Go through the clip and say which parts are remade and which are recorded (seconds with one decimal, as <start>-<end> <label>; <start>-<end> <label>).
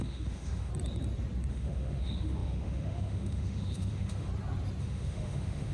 0.0-0.7 remade; 0.7-1.5 recorded; 1.5-4.3 remade; 4.3-4.8 recorded; 4.8-5.7 remade